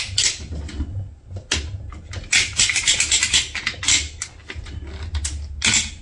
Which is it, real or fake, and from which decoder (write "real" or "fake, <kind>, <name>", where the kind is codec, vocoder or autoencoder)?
real